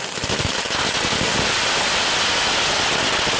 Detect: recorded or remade recorded